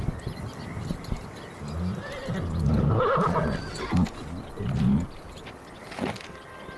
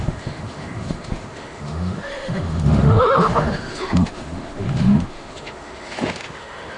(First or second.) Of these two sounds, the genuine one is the first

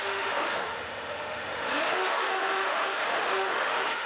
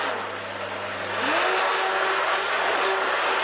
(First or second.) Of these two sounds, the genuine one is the second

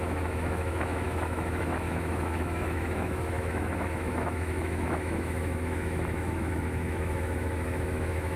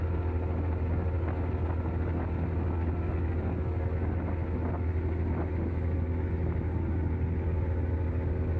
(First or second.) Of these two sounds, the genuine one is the second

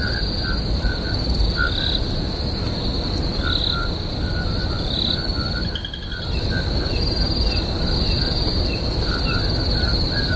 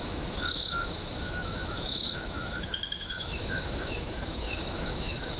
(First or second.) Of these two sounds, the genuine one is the first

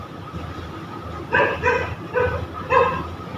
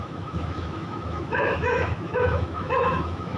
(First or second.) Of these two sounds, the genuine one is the first